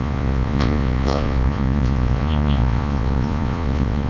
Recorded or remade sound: remade